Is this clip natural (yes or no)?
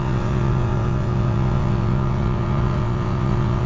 no